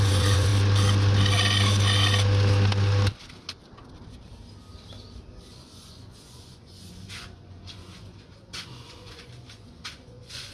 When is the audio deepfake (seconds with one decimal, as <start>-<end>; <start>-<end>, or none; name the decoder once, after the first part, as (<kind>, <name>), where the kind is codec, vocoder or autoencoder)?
0.0-0.5 (vocoder, Vocos); 5.5-10.5